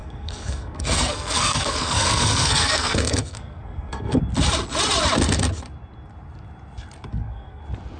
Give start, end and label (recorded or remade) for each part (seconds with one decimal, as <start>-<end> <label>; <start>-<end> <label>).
0.0-4.2 remade; 4.2-7.1 recorded; 7.1-7.6 remade; 7.6-8.0 recorded